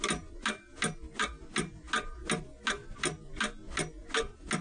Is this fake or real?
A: real